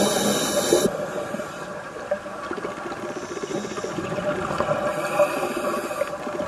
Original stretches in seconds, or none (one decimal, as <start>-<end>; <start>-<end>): 0.0-3.5; 4.2-6.5